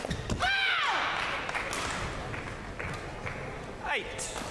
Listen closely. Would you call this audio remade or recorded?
recorded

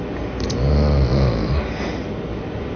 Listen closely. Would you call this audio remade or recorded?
recorded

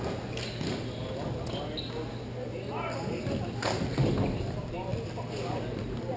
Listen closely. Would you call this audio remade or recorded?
recorded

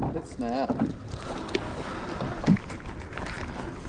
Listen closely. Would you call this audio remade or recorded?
recorded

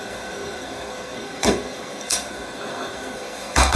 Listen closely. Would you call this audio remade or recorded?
remade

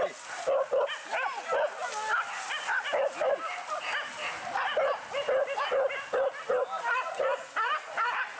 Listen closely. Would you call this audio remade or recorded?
recorded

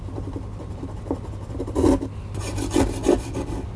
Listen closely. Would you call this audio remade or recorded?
recorded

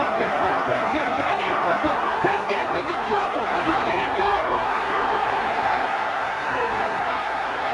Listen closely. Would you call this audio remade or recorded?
remade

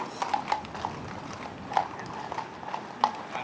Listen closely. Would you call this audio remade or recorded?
recorded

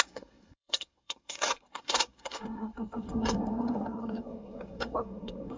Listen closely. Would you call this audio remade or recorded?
remade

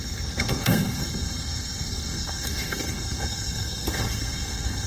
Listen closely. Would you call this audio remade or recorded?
remade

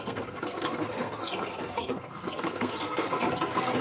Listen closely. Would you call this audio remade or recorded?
remade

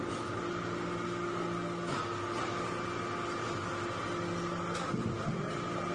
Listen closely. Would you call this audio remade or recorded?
recorded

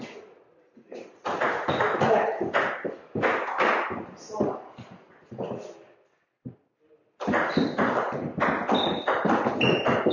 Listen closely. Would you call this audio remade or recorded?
recorded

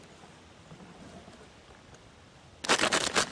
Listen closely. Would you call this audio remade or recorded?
recorded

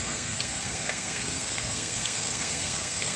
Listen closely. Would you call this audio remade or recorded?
remade